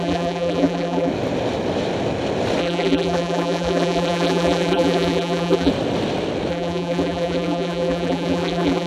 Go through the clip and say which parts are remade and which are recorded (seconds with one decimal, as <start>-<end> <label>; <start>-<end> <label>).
0.0-1.1 remade; 1.1-2.6 recorded; 2.6-5.7 remade; 5.7-6.5 recorded; 6.5-8.9 remade